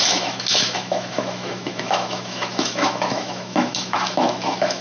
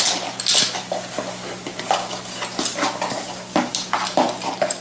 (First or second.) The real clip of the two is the second